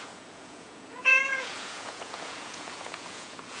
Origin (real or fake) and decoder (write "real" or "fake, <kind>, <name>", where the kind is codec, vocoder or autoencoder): fake, vocoder, Vocos